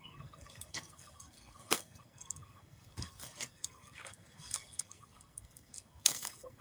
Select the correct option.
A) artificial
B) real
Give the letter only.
A